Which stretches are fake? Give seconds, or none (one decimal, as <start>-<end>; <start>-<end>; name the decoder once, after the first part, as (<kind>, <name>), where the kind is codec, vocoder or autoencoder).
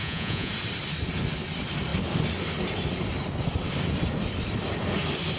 0.0-0.5 (vocoder, Vocos)